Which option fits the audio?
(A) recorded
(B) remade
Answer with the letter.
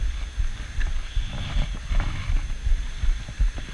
A